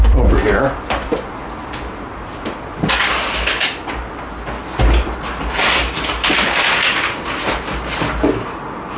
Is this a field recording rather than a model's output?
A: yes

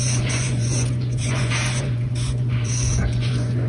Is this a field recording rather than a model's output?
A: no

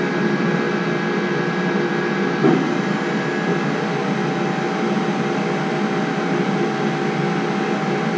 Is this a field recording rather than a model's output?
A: yes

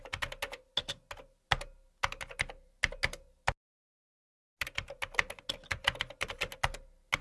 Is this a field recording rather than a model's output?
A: yes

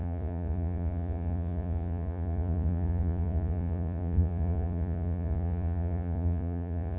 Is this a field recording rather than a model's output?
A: no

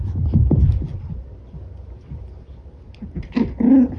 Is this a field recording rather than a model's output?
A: yes